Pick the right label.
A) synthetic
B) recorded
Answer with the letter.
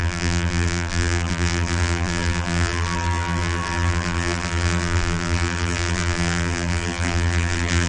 A